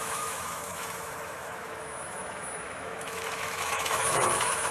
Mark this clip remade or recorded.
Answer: remade